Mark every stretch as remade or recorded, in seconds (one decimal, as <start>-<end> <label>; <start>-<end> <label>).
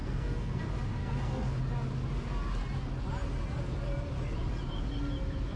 0.0-0.6 remade; 0.6-1.0 recorded; 1.0-1.6 remade; 1.6-5.6 recorded